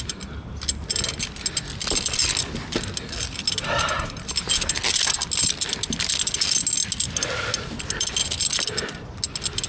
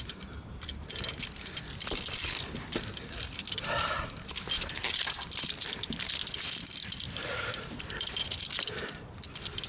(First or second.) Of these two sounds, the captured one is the first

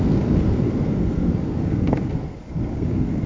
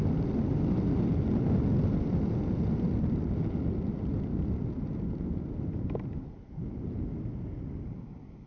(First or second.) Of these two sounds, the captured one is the second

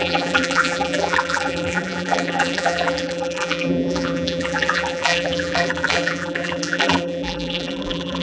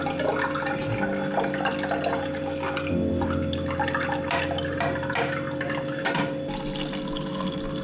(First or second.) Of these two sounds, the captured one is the second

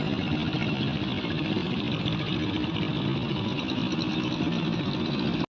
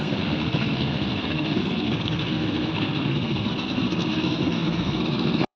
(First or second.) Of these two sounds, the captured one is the first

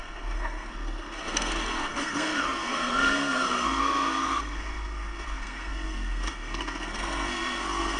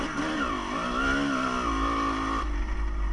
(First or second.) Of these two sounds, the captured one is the second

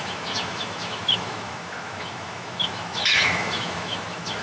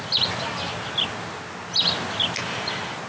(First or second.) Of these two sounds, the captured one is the second